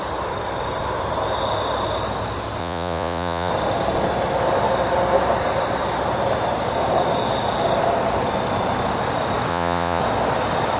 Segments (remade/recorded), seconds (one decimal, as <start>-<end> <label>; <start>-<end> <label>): 0.0-2.6 recorded; 2.6-3.5 remade; 3.5-9.5 recorded; 9.5-10.0 remade; 10.0-10.8 recorded